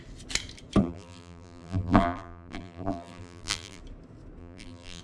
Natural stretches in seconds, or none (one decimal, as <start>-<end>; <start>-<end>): 0.0-0.8; 3.8-4.4